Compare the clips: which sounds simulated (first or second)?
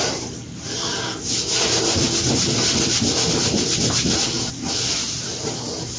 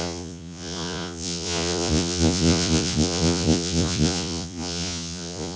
second